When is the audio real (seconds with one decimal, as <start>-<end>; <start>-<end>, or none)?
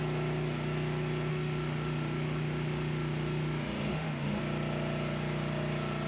0.0-1.3; 4.4-6.1